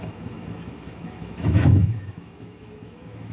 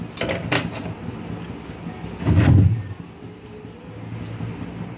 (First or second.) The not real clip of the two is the first